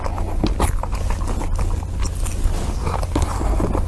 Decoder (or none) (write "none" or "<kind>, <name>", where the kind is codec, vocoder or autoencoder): none